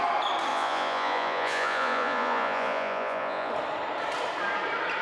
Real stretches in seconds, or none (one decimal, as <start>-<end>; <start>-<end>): 0.0-0.5; 3.5-5.0